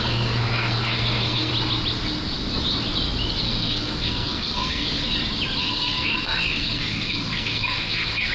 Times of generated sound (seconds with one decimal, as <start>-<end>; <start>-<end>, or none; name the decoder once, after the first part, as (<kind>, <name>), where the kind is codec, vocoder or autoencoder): 0.0-1.5 (codec, SNAC); 3.4-5.0; 5.6-8.3